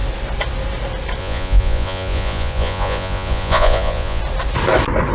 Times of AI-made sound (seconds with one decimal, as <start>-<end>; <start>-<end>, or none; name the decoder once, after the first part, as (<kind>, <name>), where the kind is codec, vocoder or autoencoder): 1.2-4.2 (vocoder, Vocos)